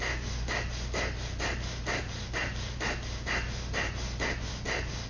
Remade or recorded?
recorded